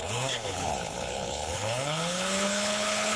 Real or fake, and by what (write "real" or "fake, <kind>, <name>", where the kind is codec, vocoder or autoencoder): fake, codec, HILCodec